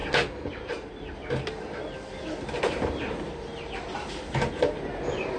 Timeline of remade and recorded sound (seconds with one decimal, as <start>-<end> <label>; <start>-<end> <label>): 0.0-5.4 recorded